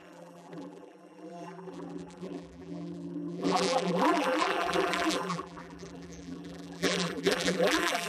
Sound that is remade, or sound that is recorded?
remade